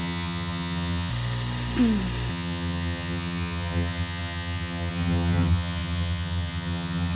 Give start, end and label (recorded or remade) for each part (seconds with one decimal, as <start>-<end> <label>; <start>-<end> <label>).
0.0-1.1 remade; 1.1-2.3 recorded; 2.3-7.1 remade